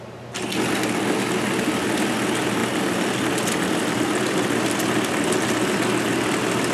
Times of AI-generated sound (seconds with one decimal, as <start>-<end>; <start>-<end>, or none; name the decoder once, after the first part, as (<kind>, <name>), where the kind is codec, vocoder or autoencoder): none